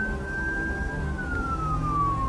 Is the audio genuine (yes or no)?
yes